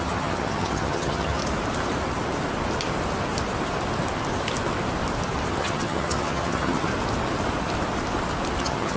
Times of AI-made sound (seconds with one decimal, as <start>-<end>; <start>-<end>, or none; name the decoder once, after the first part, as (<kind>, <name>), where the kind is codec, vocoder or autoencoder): 0.0-1.4 (vocoder, HiFi-GAN); 5.6-6.9; 8.6-9.0